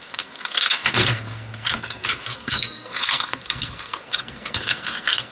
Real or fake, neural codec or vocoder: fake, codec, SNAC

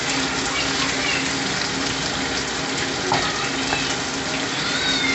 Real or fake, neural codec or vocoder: real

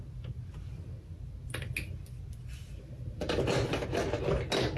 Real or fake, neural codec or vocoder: real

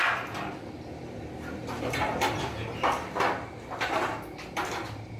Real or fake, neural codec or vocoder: real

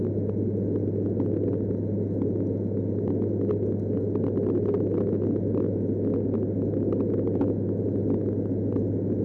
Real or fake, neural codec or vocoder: real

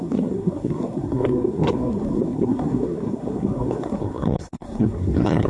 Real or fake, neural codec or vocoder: fake, codec, SNAC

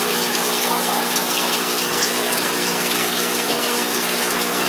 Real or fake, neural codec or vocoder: fake, codec, SNAC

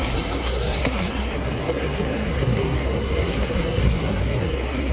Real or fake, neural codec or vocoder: fake, codec, SNAC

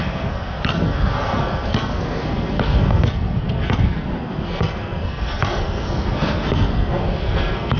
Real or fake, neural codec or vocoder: fake, codec, SNAC